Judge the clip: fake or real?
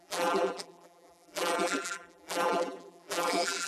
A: fake